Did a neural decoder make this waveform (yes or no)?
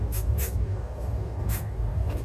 yes